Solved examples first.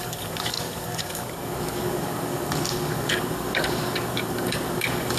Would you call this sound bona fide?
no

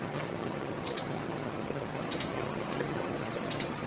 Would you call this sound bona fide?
no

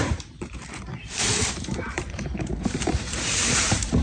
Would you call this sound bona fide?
no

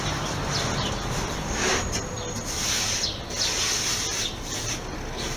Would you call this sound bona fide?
yes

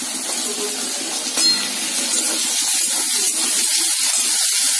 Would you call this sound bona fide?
yes